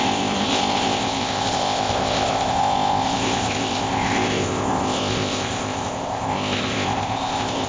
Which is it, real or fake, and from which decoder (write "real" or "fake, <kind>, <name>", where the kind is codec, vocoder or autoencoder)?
fake, codec, ZipCodec